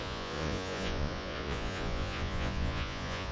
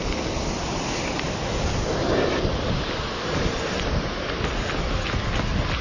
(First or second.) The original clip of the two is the second